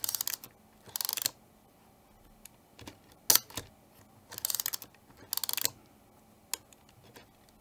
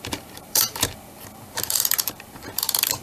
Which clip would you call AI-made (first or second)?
second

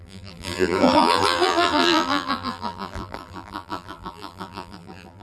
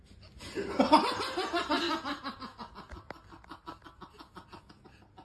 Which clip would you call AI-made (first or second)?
first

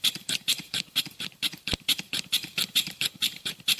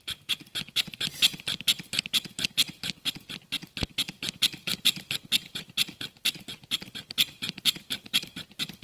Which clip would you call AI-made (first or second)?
first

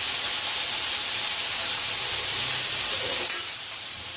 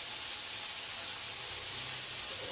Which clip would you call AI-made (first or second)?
first